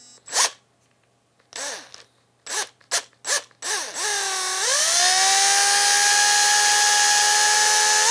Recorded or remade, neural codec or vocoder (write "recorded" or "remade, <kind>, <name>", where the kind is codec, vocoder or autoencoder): recorded